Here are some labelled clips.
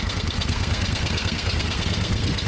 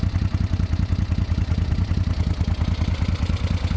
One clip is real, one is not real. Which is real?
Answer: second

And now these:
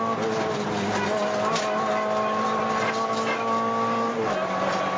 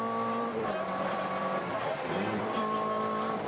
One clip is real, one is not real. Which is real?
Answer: first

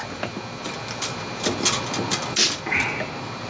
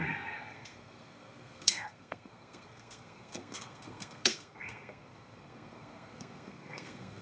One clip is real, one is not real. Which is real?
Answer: first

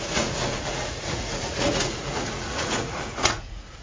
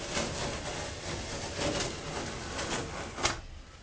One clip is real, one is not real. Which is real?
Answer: second